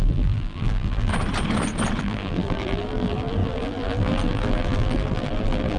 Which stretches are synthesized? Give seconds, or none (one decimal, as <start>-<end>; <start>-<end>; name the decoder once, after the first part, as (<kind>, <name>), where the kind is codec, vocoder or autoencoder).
0.0-1.1 (vocoder, BigVGAN v2); 2.0-5.8